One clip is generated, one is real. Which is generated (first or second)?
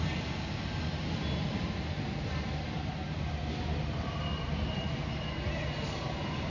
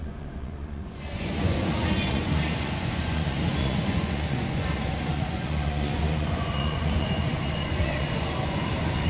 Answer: second